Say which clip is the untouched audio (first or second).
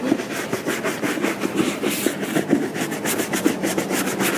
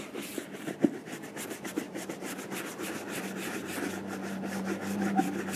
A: first